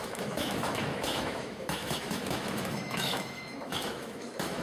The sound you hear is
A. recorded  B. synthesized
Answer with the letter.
B